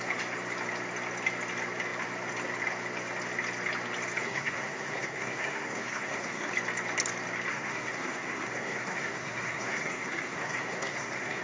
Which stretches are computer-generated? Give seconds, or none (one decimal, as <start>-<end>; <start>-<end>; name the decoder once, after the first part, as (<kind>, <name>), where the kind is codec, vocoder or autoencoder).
4.2-6.5 (codec, SNAC); 7.5-11.4